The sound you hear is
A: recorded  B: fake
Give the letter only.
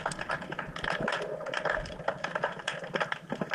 A